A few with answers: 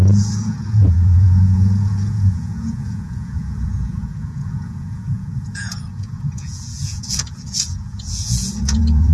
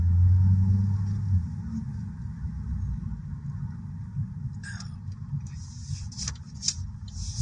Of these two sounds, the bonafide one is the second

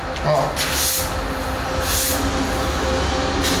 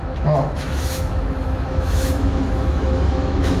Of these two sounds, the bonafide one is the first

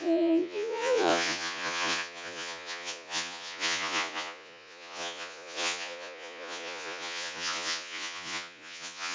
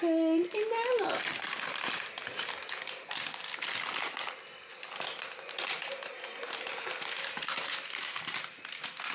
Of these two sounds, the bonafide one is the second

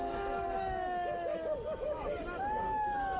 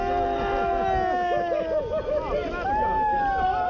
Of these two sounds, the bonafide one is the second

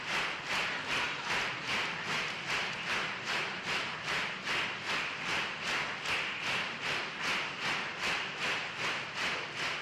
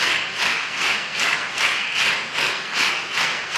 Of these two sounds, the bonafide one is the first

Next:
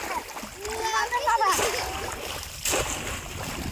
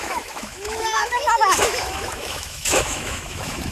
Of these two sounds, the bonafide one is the first